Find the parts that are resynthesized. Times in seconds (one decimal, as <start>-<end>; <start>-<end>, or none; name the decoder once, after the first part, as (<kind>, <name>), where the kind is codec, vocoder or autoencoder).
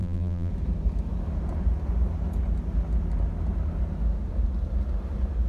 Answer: 0.0-0.5 (vocoder, BigVGAN v2)